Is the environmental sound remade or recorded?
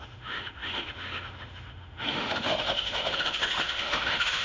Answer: remade